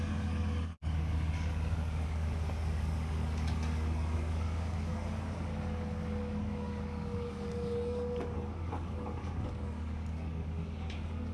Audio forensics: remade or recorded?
remade